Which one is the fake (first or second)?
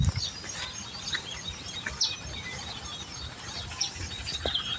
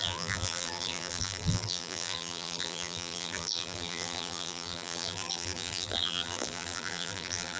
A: second